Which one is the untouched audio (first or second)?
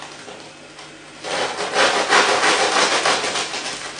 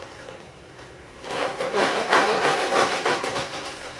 first